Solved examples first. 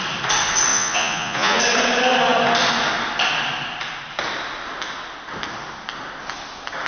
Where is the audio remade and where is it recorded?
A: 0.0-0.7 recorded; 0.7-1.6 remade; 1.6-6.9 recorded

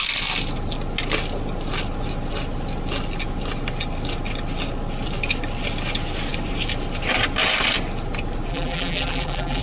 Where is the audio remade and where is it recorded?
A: 0.0-8.5 recorded; 8.5-9.6 remade

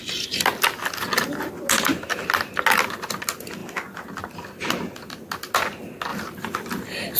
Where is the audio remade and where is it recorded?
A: 0.0-6.1 recorded; 6.1-7.2 remade

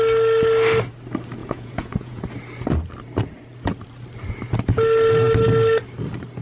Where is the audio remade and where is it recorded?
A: 0.0-1.4 recorded; 1.4-2.2 remade; 2.2-6.4 recorded

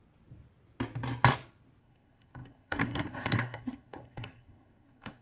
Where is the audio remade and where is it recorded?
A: 0.0-1.8 recorded; 1.8-5.2 remade

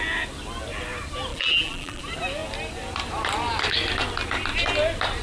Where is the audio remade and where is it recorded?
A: 0.0-1.3 recorded; 1.3-2.0 remade; 2.0-5.2 recorded

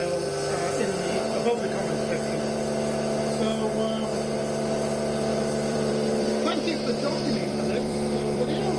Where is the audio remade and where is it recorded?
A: 0.0-5.3 recorded; 5.3-8.8 remade

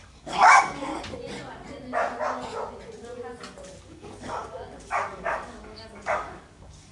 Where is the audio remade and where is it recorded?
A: 0.0-0.9 remade; 0.9-3.8 recorded; 3.8-6.9 remade